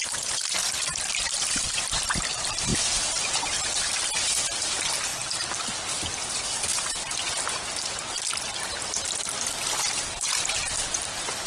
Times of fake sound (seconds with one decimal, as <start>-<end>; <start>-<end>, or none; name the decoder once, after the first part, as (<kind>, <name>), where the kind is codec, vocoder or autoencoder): 1.2-2.7 (vocoder, BigVGAN v2); 3.5-5.1; 10.0-11.5

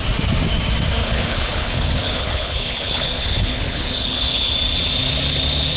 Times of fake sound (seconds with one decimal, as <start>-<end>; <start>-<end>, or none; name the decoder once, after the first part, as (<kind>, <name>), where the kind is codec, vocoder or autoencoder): 1.0-4.5 (codec, HILCodec)

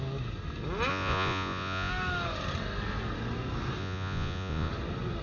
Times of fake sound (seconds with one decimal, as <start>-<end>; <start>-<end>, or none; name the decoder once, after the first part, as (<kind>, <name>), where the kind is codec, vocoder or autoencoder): 0.9-1.9 (vocoder, Vocos); 3.8-4.7

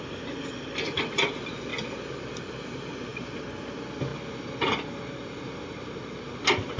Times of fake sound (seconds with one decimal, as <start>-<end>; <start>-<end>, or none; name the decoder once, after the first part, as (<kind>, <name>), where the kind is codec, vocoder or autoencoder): none